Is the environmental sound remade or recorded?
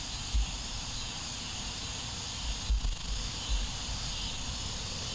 recorded